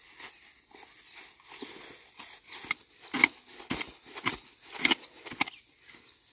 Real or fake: real